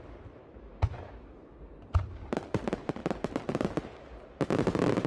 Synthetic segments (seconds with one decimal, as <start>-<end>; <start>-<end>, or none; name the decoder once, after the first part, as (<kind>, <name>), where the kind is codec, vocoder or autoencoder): 0.4-1.6 (autoencoder, DAC-VAE)